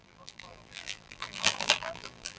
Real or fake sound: fake